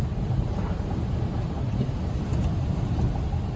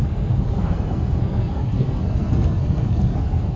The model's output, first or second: second